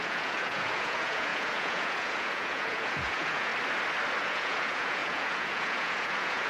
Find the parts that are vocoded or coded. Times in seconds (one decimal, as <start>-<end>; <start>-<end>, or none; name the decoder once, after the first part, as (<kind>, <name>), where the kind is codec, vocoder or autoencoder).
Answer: 0.0-3.5 (vocoder, Vocos); 4.2-6.5